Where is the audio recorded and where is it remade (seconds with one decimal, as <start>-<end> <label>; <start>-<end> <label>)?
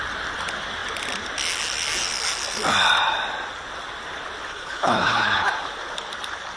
0.0-4.5 recorded; 4.5-5.5 remade; 5.5-6.6 recorded